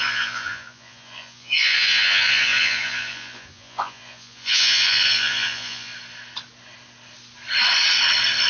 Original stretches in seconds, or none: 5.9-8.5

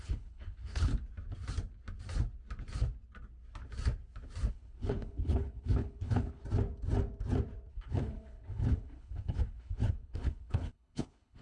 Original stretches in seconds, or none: 0.9-4.5; 6.4-7.7

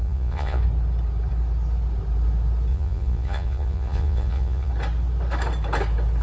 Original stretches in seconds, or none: 0.6-2.7; 4.7-6.2

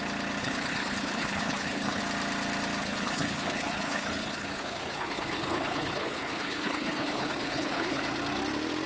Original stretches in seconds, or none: 0.0-0.4; 2.0-2.8; 8.0-8.9

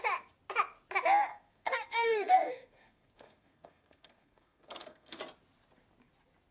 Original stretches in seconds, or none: 0.0-1.3; 5.2-6.5

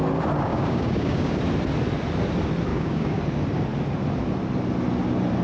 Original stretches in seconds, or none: 0.0-0.5; 1.4-2.7; 3.2-5.4